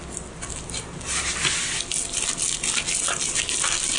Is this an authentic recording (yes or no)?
yes